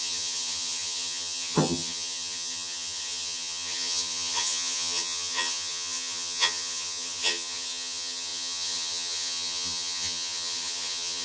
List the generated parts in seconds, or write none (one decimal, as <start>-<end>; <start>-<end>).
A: 0.0-11.2